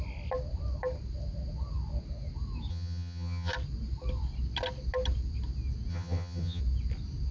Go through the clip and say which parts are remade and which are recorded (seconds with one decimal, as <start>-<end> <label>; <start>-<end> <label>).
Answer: 0.0-2.7 recorded; 2.7-3.5 remade; 3.5-5.9 recorded; 5.9-6.6 remade; 6.6-7.3 recorded